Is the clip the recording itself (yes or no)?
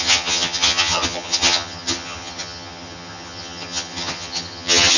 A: no